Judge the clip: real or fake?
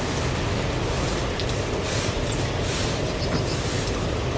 real